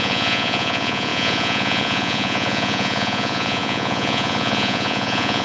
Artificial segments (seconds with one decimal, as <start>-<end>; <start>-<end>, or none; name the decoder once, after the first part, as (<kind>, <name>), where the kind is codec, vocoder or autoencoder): 0.0-5.4 (vocoder, Vocos)